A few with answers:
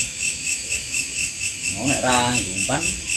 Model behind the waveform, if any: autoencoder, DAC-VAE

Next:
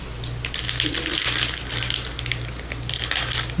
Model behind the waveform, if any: none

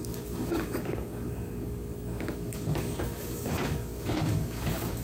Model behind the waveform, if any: codec, DAC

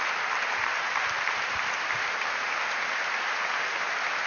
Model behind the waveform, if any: none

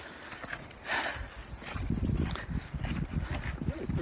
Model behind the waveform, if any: none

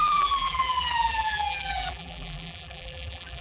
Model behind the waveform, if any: vocoder, BigVGAN v2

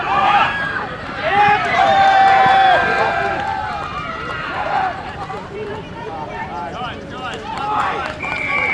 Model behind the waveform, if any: vocoder, BigVGAN v2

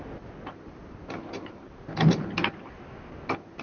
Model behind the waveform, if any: none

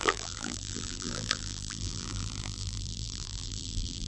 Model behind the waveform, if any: vocoder, BigVGAN v2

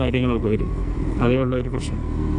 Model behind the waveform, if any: codec, SNAC